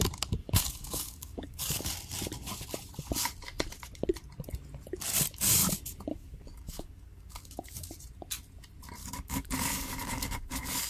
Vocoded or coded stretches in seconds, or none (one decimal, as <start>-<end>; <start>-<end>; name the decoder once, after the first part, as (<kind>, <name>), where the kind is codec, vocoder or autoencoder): 0.4-1.9 (codec, DAC); 6.1-7.9; 9.0-10.9